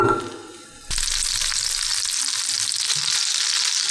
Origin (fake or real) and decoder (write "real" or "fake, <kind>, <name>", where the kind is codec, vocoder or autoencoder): real